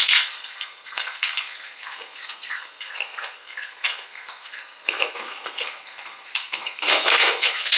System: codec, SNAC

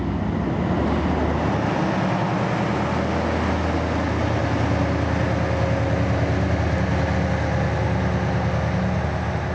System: none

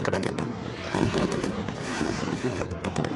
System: codec, SNAC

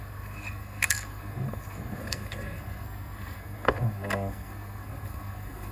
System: codec, SNAC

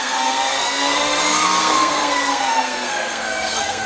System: codec, SNAC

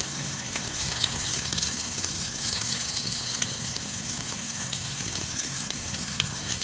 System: codec, SNAC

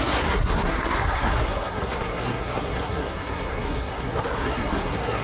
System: codec, SNAC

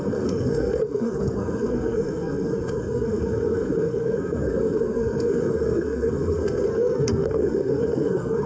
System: codec, SNAC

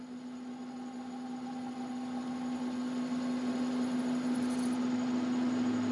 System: none